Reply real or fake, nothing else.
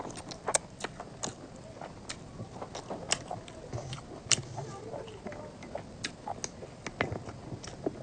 real